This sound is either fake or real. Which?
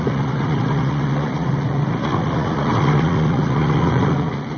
fake